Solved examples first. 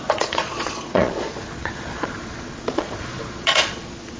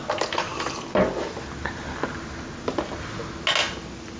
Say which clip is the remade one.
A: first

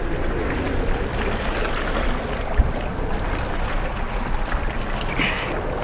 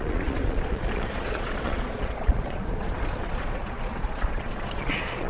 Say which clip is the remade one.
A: second